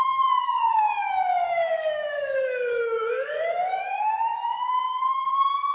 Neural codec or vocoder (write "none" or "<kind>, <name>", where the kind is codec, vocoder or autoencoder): codec, DAC